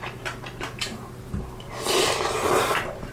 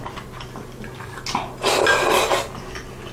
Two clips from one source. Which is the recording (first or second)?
second